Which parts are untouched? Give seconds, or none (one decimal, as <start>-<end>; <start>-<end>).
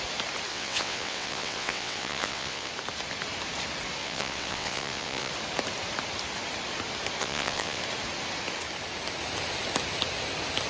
0.0-0.5; 2.7-4.0; 5.3-7.2; 7.8-10.7